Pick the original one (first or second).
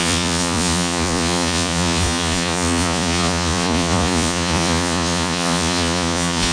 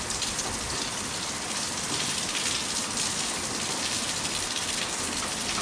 second